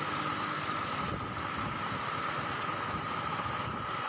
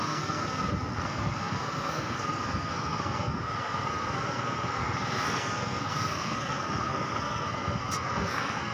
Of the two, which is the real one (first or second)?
first